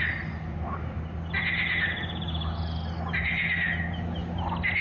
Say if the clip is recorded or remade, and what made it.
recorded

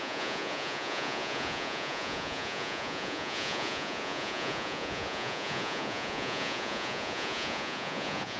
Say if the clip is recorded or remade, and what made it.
remade, vocoder, Vocos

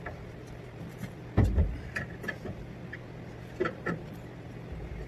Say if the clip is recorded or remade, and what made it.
remade, vocoder, BigVGAN v2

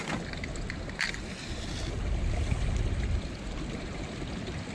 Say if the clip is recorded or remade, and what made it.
recorded